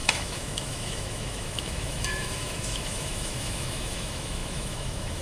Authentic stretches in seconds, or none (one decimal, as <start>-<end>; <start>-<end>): none